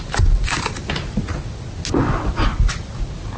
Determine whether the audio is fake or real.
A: real